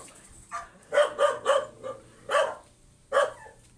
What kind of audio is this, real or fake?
real